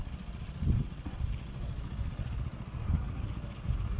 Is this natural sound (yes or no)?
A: yes